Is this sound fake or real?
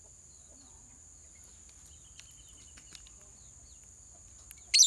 real